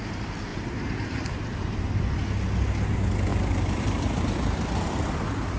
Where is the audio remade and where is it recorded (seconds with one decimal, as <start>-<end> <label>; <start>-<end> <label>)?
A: 0.0-0.5 recorded; 0.5-1.8 remade; 1.8-3.3 recorded; 3.3-5.0 remade; 5.0-5.6 recorded